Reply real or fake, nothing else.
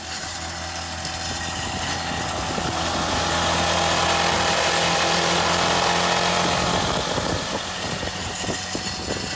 real